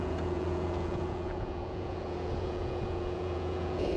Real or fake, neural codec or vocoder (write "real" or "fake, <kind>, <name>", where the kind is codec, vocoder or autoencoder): fake, vocoder, Vocos